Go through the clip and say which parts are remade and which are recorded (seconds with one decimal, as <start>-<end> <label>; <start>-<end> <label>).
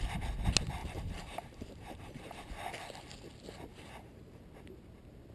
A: 0.0-0.8 recorded; 0.8-2.2 remade; 2.2-3.7 recorded; 3.7-4.4 remade; 4.4-5.3 recorded